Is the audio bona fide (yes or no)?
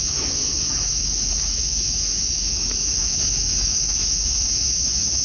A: no